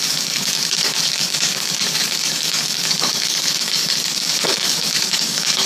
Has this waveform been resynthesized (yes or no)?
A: yes